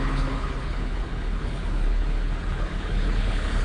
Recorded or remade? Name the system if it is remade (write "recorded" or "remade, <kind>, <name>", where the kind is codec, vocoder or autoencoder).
remade, codec, HILCodec